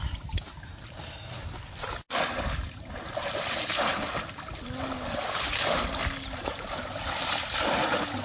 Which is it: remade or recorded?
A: recorded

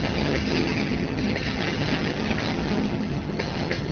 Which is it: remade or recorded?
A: remade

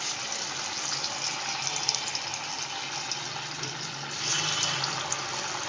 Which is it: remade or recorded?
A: recorded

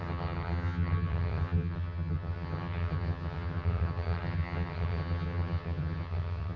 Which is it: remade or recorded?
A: remade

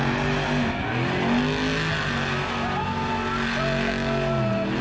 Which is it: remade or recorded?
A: recorded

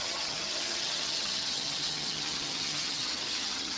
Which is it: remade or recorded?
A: remade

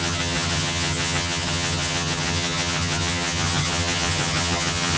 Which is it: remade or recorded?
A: remade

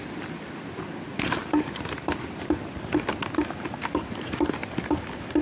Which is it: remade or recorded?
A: recorded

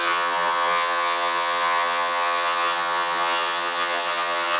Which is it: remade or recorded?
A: remade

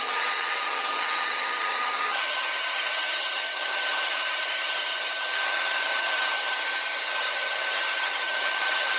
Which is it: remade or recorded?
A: remade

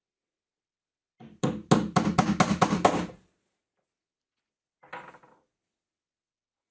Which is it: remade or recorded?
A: recorded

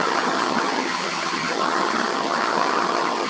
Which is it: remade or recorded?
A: remade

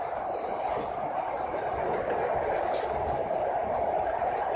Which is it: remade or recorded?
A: recorded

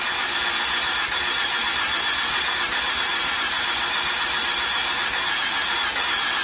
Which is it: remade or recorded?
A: recorded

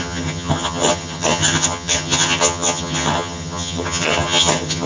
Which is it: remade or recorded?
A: remade